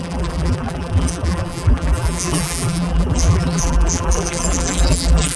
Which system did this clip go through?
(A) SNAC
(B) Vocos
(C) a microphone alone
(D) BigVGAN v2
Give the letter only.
D